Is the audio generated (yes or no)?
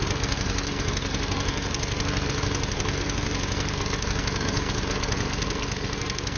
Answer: yes